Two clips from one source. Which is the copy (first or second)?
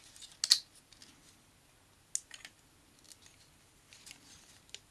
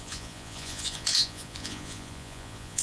second